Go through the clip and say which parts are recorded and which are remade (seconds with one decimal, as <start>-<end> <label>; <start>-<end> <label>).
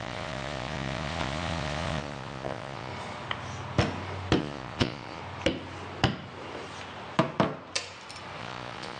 0.0-2.9 remade; 2.9-4.4 recorded; 4.4-5.2 remade; 5.2-8.4 recorded; 8.4-9.0 remade